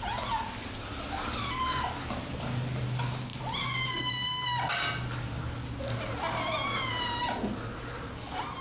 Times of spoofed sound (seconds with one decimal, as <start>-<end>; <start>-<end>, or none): none